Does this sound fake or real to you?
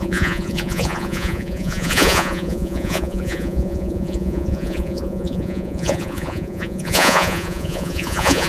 fake